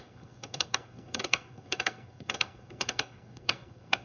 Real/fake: fake